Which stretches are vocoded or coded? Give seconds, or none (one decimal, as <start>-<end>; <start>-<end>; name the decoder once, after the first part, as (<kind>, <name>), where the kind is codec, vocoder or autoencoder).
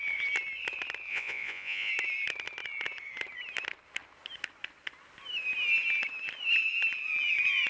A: 1.1-1.9 (vocoder, Vocos)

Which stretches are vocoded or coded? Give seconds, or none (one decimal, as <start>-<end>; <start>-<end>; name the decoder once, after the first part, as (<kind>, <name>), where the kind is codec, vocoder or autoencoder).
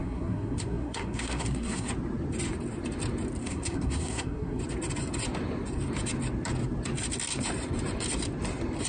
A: 0.0-1.9 (codec, SNAC); 3.4-4.6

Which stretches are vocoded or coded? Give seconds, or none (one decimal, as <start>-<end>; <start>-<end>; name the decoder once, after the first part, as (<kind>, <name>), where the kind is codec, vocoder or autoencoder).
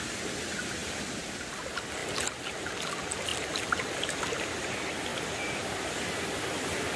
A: 0.8-1.5 (vocoder, BigVGAN v2); 3.3-4.2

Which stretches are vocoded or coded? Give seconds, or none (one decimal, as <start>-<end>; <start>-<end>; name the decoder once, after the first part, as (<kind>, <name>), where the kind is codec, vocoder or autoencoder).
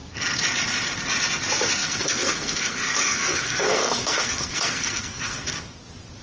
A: 1.8-5.5 (codec, SNAC)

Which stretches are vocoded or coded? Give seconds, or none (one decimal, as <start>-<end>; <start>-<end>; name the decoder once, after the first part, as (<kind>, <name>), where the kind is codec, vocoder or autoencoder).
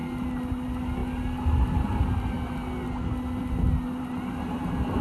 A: none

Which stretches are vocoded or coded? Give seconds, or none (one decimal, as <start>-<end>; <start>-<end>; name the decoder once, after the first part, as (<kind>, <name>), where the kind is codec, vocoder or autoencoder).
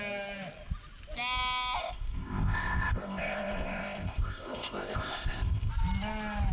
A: 1.8-5.7 (codec, ZipCodec)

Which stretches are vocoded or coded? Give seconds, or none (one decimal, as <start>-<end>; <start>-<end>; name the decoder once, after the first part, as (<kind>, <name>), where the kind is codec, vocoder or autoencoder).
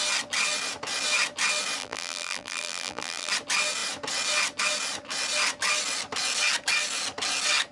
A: 1.8-3.3 (vocoder, BigVGAN v2)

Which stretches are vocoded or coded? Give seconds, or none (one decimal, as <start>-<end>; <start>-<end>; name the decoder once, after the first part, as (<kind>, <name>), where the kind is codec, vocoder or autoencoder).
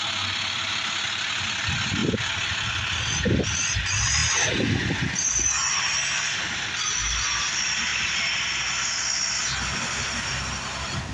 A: none